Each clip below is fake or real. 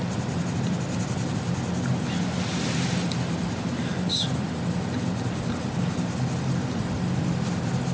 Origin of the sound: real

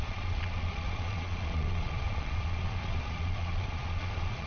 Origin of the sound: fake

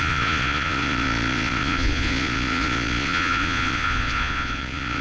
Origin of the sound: fake